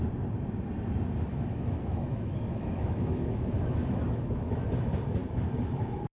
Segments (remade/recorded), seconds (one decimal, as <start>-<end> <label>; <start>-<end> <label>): 0.0-1.3 recorded; 1.3-4.7 remade; 4.7-5.2 recorded; 5.2-6.2 remade